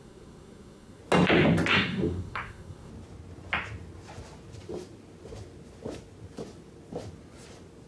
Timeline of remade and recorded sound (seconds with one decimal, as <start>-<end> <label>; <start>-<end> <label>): 0.0-1.0 remade; 1.0-1.7 recorded; 1.7-2.9 remade; 2.9-7.9 recorded